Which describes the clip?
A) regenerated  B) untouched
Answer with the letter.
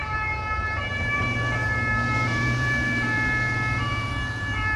A